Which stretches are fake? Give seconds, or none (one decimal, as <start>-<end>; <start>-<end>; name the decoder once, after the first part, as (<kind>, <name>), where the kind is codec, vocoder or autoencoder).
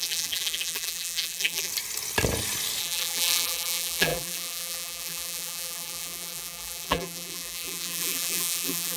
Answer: 0.0-1.7 (vocoder, BigVGAN v2); 2.8-9.0